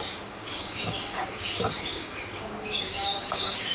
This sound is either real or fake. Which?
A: fake